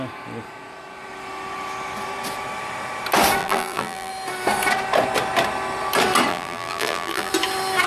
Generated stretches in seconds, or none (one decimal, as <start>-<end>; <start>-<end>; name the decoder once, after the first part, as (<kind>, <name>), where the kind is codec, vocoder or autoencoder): 3.4-4.1 (vocoder, BigVGAN v2); 6.3-7.3